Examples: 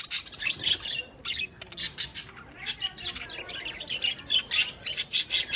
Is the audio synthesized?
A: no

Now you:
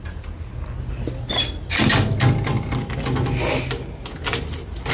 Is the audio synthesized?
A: no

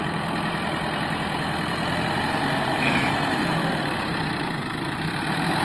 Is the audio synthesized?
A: yes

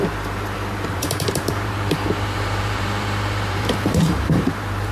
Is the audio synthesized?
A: yes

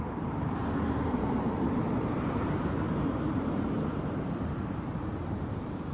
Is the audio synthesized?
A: yes